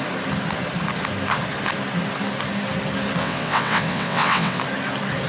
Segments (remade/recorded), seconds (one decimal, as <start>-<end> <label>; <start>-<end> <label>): 0.0-3.2 recorded; 3.2-4.6 remade; 4.6-5.3 recorded